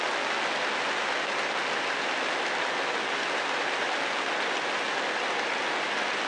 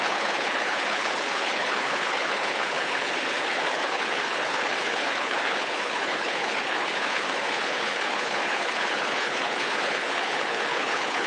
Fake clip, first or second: second